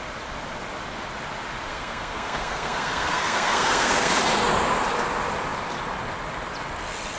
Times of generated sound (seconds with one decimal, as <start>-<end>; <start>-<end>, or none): 1.7-4.1